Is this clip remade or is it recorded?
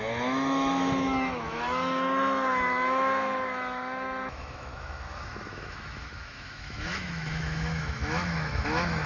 remade